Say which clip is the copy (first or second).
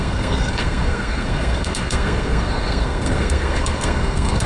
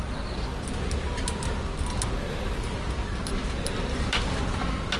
first